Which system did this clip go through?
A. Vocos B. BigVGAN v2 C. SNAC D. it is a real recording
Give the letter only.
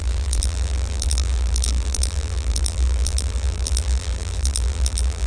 B